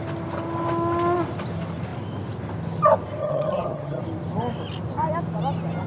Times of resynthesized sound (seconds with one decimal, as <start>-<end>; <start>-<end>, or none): 3.2-4.0

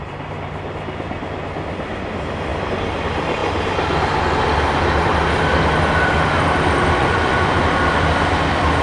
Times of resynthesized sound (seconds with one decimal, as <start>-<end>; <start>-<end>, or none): 7.0-7.6

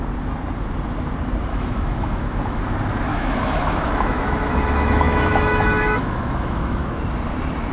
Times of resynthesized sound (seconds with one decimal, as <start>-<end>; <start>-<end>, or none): 1.5-2.6; 3.1-7.0

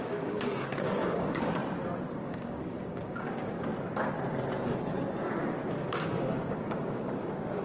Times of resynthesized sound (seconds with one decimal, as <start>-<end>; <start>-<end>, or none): 0.0-1.6; 2.2-3.7; 5.7-7.6

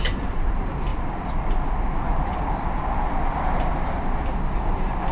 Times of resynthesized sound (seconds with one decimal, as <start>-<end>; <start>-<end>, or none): none

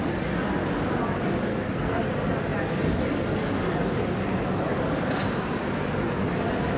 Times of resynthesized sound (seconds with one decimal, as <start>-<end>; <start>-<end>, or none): 1.5-2.0

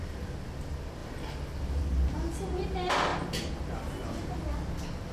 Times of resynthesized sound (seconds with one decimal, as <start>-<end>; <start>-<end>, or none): none

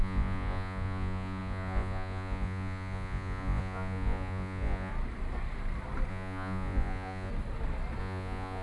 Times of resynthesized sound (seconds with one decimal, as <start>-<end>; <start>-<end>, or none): 0.0-4.9; 6.1-7.3; 8.0-8.6